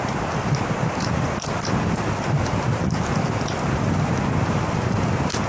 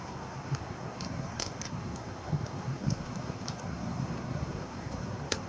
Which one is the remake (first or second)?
second